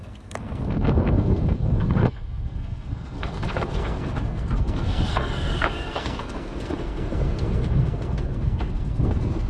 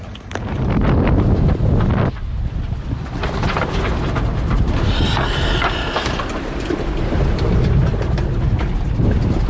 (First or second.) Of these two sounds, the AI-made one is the first